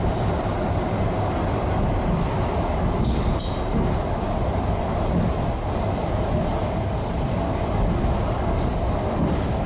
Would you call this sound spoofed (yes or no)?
no